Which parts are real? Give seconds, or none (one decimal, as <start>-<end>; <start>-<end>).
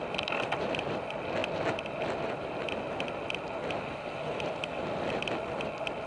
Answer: 0.0-6.1